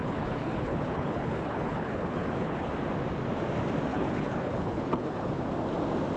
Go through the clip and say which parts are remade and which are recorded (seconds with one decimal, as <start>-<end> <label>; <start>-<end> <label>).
0.0-2.7 remade; 2.7-3.9 recorded; 3.9-5.4 remade; 5.4-6.2 recorded